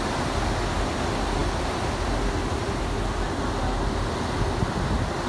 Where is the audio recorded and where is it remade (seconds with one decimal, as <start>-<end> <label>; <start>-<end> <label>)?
0.0-5.3 recorded